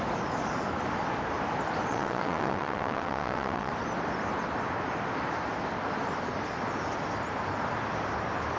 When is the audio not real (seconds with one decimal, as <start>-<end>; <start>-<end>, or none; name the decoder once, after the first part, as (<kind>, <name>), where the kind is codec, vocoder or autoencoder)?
1.9-3.7 (vocoder, WaveNeXt)